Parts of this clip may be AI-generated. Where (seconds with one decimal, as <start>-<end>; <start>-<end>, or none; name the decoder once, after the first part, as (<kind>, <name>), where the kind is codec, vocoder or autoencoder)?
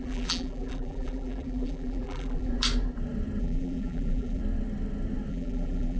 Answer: 0.0-2.5 (vocoder, BigVGAN v2); 3.4-4.4; 5.3-6.0